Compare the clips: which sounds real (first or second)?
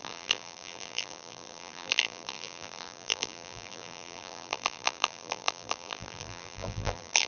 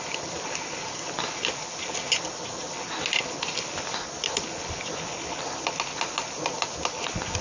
second